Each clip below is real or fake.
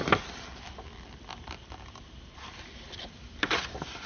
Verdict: real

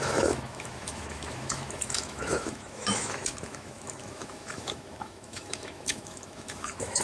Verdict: fake